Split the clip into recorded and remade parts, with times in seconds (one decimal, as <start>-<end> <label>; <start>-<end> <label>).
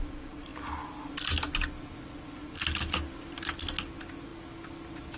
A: 0.0-5.2 recorded